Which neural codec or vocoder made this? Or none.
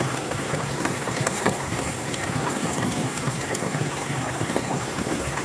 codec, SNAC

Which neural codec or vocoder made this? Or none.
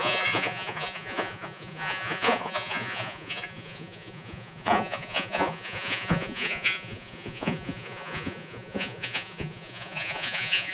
vocoder, Vocos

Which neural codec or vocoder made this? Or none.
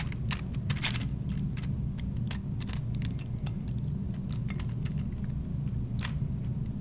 none